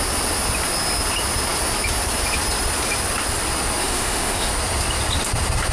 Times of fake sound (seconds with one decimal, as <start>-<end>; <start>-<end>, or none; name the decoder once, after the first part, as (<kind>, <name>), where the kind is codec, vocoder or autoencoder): 3.8-4.5 (autoencoder, DAC-VAE)